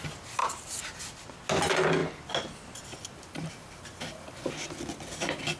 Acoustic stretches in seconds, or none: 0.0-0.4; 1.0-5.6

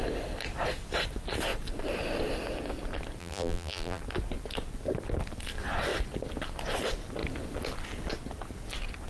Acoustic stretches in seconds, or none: 0.0-3.2; 4.0-9.1

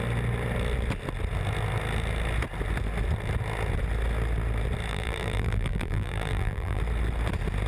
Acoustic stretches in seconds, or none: 0.0-4.9; 6.8-7.7

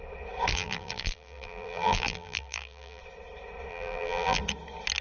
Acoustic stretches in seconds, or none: 0.0-0.5; 3.0-3.7; 4.4-5.0